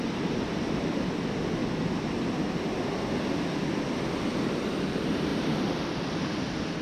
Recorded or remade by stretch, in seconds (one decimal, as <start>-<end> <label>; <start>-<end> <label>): 0.0-1.6 remade; 1.6-4.2 recorded; 4.2-5.3 remade; 5.3-6.8 recorded